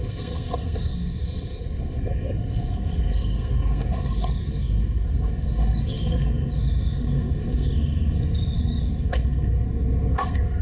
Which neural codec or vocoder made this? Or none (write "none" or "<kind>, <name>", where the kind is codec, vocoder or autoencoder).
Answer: codec, SNAC